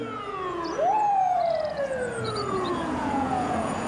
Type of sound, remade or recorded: remade